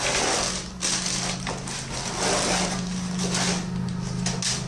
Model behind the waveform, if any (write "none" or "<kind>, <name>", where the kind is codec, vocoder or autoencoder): none